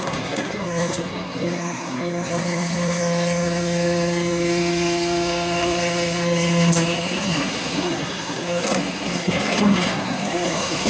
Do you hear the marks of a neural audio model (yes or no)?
yes